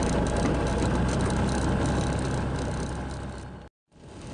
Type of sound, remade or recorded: recorded